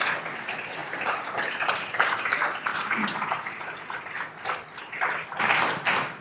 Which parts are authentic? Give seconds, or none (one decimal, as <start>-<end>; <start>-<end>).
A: 0.0-6.2